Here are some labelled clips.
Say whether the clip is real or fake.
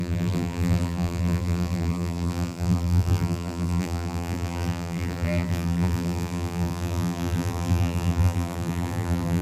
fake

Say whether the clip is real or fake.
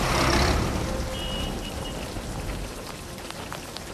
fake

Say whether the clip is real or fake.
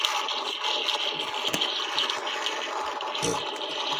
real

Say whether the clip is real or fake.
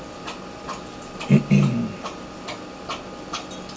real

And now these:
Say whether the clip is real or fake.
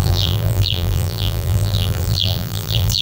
fake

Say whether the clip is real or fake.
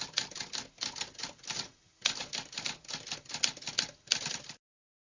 real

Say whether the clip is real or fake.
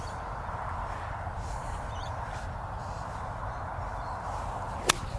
real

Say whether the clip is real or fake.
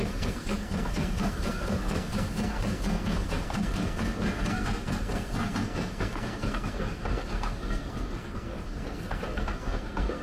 fake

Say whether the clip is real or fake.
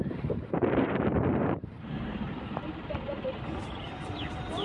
fake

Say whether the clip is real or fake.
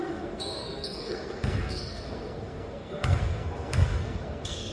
fake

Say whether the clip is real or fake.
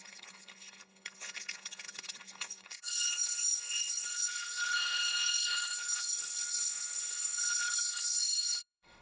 fake